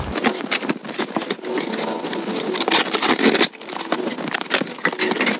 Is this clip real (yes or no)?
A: yes